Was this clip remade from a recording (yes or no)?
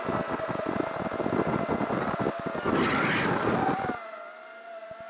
no